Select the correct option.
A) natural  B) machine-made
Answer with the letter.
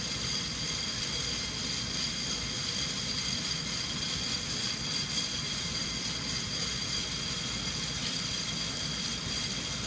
A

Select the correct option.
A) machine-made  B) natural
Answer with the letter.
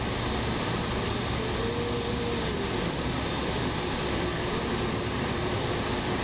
B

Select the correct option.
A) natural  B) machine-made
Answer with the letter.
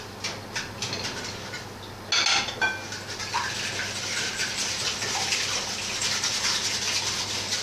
A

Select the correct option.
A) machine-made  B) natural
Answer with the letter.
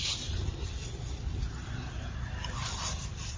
B